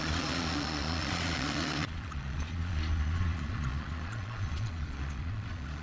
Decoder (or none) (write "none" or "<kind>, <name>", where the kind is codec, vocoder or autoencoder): vocoder, Vocos